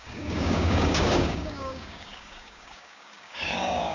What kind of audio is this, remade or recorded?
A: remade